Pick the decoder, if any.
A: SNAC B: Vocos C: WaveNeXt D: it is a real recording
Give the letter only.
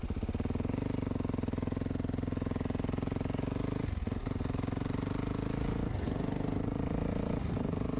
D